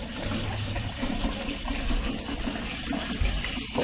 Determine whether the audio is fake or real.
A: real